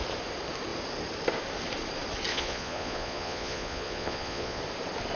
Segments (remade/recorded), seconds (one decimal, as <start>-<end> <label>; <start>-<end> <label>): 0.0-2.3 recorded; 2.3-4.6 remade; 4.6-5.2 recorded